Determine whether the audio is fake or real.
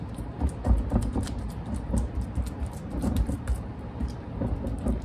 fake